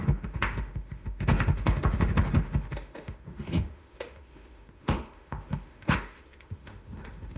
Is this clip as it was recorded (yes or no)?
no